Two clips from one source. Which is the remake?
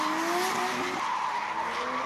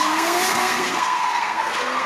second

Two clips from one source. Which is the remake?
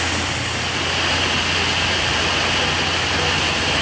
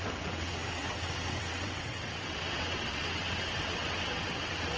second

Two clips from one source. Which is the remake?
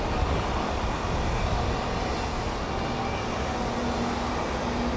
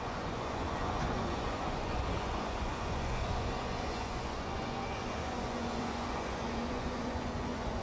second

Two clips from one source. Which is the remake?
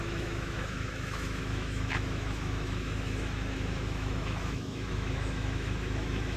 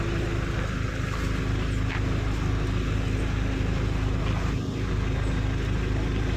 first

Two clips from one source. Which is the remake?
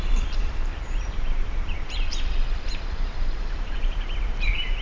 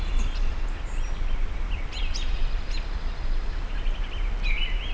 first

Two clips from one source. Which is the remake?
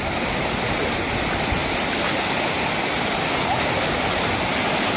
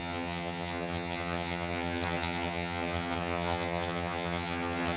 second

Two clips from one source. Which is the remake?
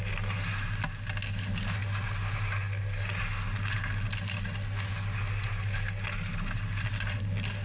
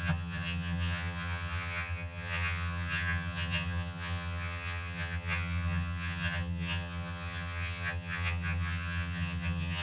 second